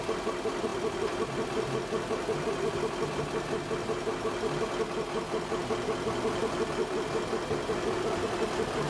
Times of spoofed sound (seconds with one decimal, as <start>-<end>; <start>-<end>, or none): none